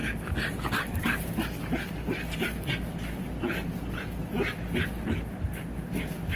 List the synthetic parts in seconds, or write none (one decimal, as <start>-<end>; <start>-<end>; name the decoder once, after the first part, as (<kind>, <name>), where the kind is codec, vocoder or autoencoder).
0.0-2.6 (vocoder, BigVGAN v2)